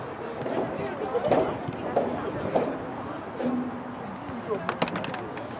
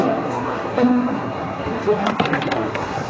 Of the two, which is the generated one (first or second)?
second